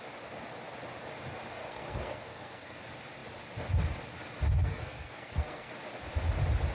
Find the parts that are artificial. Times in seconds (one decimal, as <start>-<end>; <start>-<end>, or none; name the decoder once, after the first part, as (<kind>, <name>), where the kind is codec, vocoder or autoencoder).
1.6-2.8 (codec, SNAC); 4.6-5.7